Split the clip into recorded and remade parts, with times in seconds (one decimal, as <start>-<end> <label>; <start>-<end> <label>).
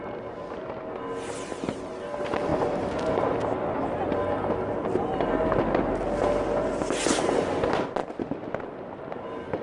0.0-2.5 recorded; 2.5-3.1 remade; 3.1-8.0 recorded; 8.0-9.1 remade; 9.1-9.6 recorded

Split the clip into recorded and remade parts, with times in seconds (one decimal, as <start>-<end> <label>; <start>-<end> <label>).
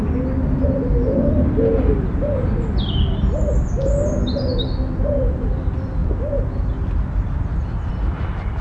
0.0-8.6 recorded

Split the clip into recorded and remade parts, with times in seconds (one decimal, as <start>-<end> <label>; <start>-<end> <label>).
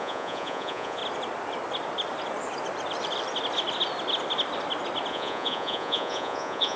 0.0-1.0 remade; 1.0-5.1 recorded; 5.1-6.8 remade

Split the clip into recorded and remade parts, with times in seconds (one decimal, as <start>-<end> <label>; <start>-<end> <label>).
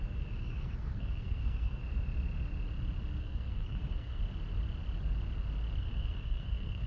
0.0-1.8 remade; 1.8-3.2 recorded; 3.2-4.2 remade; 4.2-5.8 recorded; 5.8-6.9 remade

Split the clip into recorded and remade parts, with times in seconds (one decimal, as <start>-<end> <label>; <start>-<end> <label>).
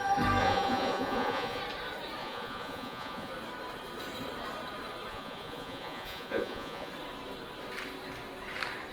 0.0-0.4 recorded; 0.4-1.6 remade; 1.6-2.2 recorded; 2.2-3.3 remade; 3.3-5.1 recorded; 5.1-6.9 remade; 6.9-8.9 recorded